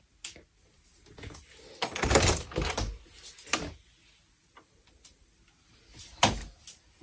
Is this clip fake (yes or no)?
no